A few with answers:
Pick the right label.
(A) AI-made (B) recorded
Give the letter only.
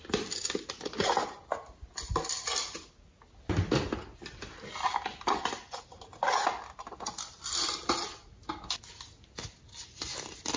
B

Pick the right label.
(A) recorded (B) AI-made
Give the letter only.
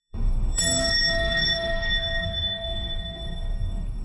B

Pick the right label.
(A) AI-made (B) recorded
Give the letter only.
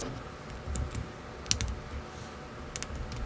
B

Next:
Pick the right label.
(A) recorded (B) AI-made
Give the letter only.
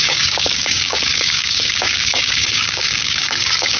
B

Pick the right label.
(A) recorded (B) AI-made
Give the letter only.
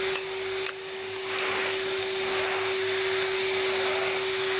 A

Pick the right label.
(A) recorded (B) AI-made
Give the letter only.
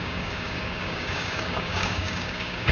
B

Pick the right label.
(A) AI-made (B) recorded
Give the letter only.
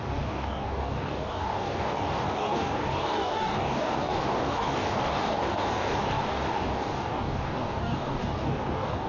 A